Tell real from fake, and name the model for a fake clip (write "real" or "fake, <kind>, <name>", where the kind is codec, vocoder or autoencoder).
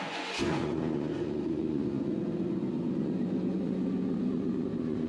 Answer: fake, vocoder, Vocos